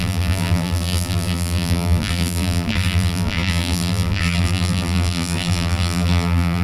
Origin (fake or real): fake